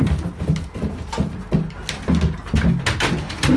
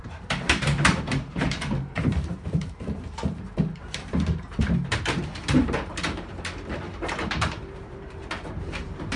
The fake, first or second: second